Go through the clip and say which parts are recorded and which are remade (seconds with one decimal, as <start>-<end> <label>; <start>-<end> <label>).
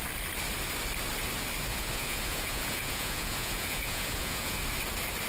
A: 0.0-1.7 recorded; 1.7-4.6 remade; 4.6-5.3 recorded